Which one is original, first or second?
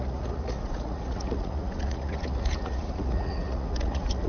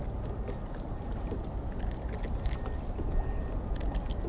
second